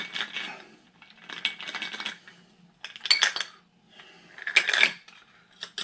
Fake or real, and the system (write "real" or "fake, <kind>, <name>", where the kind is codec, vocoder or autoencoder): real